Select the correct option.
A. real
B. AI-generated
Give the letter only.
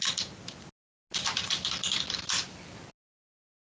A